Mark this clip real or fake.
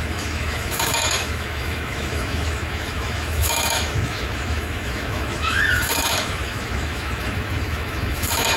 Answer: fake